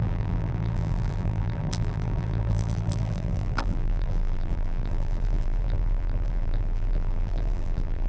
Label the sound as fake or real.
fake